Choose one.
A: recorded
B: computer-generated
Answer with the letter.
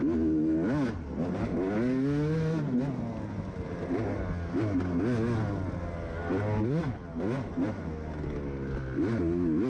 A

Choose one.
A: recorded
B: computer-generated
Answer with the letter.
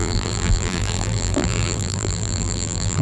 B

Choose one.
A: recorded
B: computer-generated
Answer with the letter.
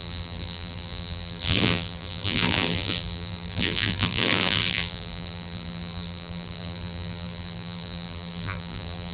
B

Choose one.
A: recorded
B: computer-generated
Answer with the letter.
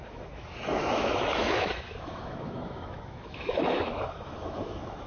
B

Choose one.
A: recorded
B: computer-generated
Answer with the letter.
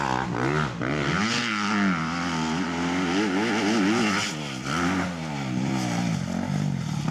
A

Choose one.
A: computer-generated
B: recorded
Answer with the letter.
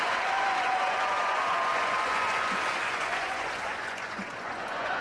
A